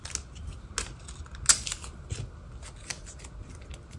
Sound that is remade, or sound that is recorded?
recorded